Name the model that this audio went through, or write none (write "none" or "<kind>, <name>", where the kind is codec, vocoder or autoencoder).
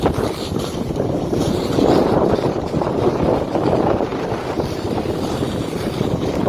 vocoder, BigVGAN v2